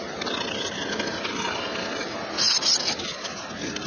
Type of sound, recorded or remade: recorded